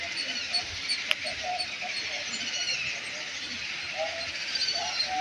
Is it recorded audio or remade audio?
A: recorded